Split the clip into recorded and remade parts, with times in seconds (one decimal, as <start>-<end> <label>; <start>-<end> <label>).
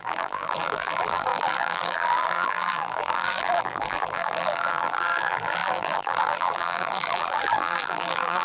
0.0-8.4 remade